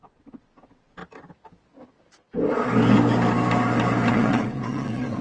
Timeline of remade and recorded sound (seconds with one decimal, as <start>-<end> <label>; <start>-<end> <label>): 0.0-1.0 remade; 1.0-4.1 recorded; 4.1-5.2 remade